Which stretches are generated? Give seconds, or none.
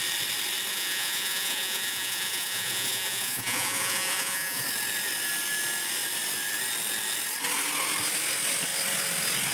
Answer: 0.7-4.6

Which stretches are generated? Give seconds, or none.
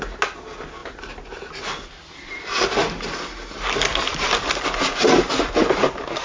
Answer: none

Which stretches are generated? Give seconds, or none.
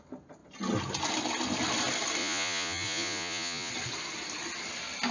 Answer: 2.2-3.7